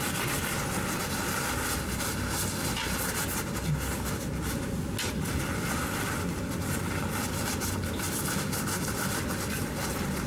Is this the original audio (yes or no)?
yes